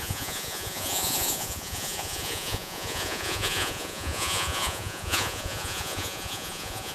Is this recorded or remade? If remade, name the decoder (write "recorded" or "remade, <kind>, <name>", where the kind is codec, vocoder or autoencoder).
remade, vocoder, Vocos